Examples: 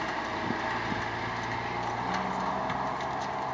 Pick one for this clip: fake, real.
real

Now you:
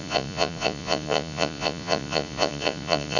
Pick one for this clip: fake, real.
fake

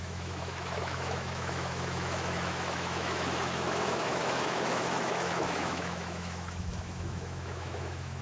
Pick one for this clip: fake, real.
fake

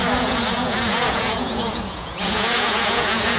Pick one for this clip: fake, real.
fake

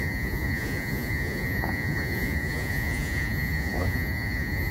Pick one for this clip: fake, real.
fake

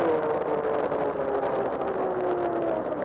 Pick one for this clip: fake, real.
real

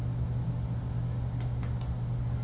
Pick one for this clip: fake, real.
real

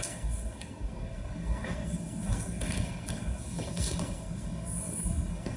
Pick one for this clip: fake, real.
fake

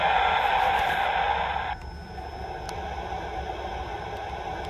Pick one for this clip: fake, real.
real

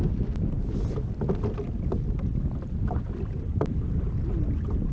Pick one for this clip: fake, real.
real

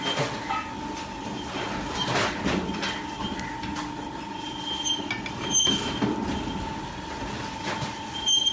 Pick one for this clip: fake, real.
real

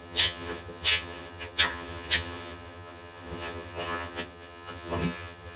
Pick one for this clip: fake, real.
fake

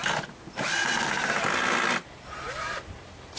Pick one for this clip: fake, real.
real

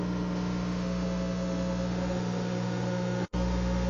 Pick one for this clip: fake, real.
fake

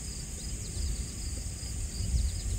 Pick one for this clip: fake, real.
real